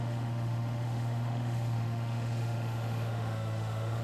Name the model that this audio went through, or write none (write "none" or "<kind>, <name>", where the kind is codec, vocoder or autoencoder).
autoencoder, DAC-VAE